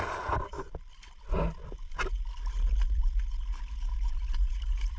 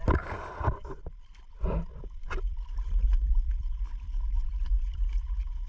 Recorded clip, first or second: first